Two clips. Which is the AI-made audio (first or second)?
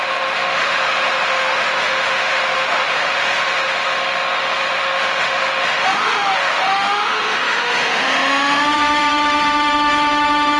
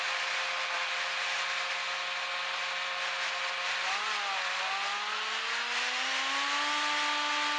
first